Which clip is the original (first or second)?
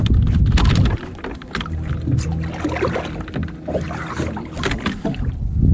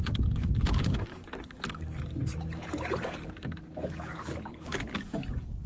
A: first